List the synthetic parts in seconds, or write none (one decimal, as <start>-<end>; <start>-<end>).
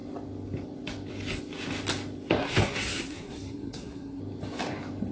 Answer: 2.4-4.2